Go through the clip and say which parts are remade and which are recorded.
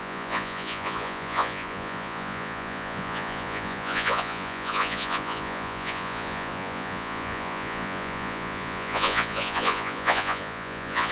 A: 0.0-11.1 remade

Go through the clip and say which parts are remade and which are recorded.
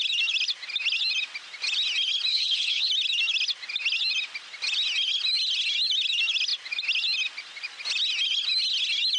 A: 0.0-2.3 recorded; 2.3-2.9 remade; 2.9-9.2 recorded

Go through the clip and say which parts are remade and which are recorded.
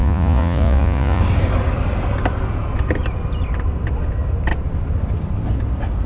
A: 0.0-1.2 remade; 1.2-6.1 recorded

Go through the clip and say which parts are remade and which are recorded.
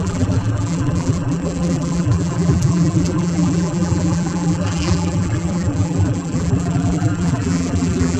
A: 0.0-8.2 remade